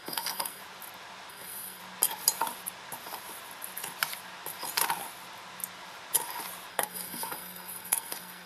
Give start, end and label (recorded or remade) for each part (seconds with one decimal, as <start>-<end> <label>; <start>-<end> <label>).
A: 0.0-0.6 remade; 0.6-1.3 recorded; 1.3-1.8 remade; 1.8-6.7 recorded; 6.7-8.5 remade